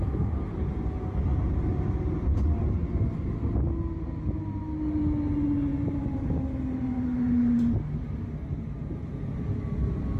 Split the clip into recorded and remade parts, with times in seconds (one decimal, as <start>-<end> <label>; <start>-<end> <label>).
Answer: 0.0-5.7 recorded; 5.7-6.4 remade; 6.4-10.2 recorded